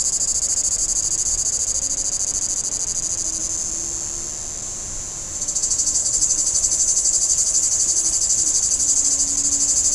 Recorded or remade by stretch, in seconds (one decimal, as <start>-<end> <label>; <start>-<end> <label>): 0.0-6.0 recorded; 6.0-9.1 remade; 9.1-9.9 recorded